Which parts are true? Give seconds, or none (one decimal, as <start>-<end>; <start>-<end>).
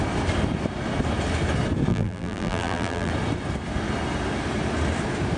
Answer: 0.0-1.9; 3.1-5.4